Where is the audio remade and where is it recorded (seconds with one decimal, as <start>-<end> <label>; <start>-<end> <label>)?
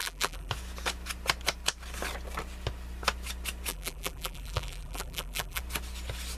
0.0-0.5 remade; 0.5-3.7 recorded; 3.7-5.6 remade; 5.6-6.4 recorded